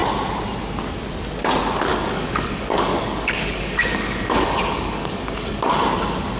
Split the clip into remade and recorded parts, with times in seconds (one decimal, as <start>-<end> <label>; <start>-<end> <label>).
0.0-1.9 recorded; 1.9-5.7 remade; 5.7-6.4 recorded